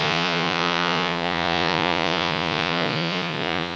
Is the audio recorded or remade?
remade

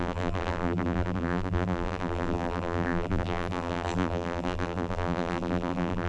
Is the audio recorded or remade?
remade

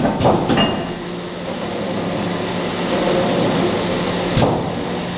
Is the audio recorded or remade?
recorded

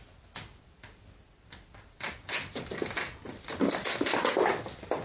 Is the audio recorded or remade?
recorded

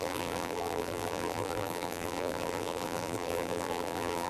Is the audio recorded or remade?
remade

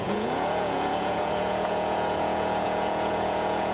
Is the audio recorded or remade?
remade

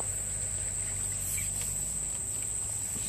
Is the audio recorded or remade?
recorded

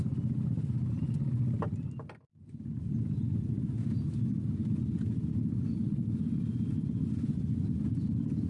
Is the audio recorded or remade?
recorded